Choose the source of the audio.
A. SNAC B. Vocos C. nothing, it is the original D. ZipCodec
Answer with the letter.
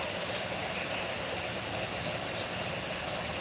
C